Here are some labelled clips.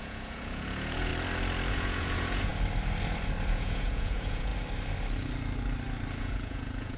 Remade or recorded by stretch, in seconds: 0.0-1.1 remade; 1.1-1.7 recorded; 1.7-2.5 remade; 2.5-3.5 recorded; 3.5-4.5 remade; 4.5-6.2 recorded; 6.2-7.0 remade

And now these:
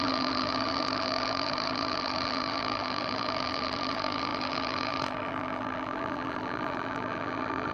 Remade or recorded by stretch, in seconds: 0.0-7.7 remade

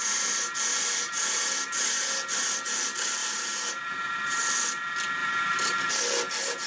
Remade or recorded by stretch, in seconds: 0.0-0.7 recorded; 0.7-1.5 remade; 1.5-3.2 recorded; 3.2-4.4 remade; 4.4-5.2 recorded; 5.2-5.9 remade; 5.9-6.7 recorded

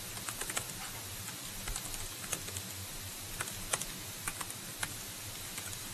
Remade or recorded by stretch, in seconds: 0.0-5.9 recorded

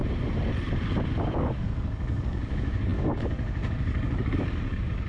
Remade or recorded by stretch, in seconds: 0.0-1.2 recorded; 1.2-5.1 remade

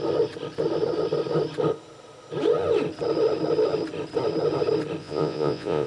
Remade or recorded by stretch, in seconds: 0.0-5.0 recorded; 5.0-5.9 remade

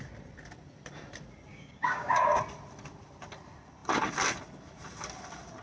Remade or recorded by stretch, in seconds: 0.0-1.5 recorded; 1.5-2.4 remade; 2.4-5.6 recorded

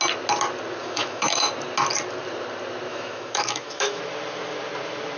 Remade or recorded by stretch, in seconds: 0.0-0.8 recorded; 0.8-1.5 remade; 1.5-2.9 recorded; 2.9-4.0 remade; 4.0-5.2 recorded